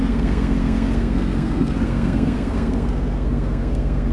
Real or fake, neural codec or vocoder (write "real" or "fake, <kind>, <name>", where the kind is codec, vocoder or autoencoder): fake, codec, SNAC